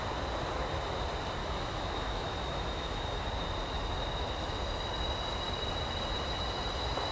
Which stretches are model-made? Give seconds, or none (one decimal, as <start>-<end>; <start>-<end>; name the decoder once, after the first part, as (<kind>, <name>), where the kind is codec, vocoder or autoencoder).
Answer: 1.4-3.3 (autoencoder, DAC-VAE)